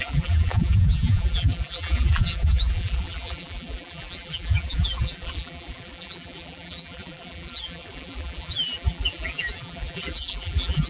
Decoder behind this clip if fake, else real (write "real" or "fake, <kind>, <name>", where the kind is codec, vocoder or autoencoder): fake, vocoder, BigVGAN v2